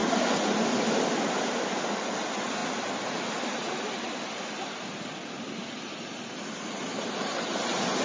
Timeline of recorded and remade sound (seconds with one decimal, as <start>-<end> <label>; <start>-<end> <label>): 0.0-8.0 recorded